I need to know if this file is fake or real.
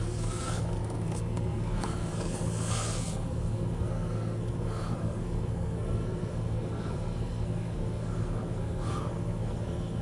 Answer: fake